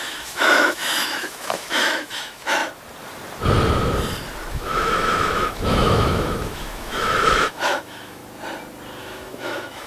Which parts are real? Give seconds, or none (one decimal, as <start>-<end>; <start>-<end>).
2.6-4.5; 8.2-9.0